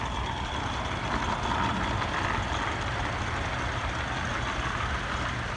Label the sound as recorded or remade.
recorded